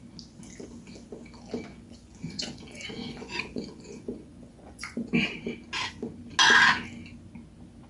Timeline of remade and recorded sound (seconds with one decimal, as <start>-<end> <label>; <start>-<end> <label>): 0.0-1.7 recorded; 1.7-5.1 remade; 5.1-7.9 recorded